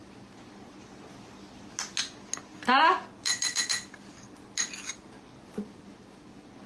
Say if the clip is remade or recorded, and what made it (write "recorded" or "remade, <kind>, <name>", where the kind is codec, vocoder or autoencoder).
recorded